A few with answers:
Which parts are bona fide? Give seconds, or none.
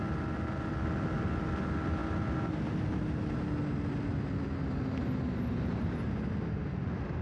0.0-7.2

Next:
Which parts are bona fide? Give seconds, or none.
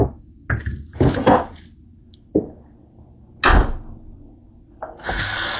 0.0-5.6